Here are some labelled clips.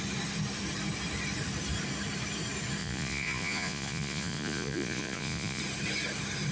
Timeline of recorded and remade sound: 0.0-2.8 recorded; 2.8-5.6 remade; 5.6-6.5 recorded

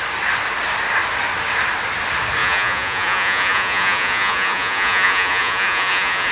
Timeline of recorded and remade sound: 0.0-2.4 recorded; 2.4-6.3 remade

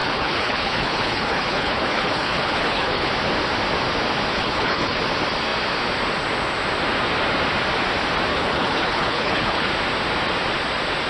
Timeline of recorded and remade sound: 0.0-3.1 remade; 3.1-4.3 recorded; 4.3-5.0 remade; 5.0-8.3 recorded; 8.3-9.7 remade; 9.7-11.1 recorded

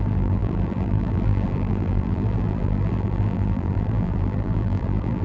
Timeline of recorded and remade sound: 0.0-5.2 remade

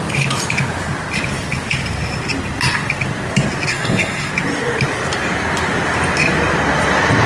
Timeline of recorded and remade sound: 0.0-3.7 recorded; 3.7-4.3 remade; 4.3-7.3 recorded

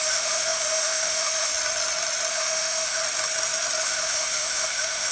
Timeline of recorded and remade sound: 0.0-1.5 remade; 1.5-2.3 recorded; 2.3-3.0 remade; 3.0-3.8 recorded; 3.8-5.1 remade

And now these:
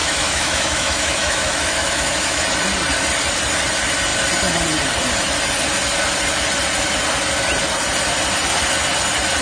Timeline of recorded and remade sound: 0.0-2.4 remade; 2.4-9.4 recorded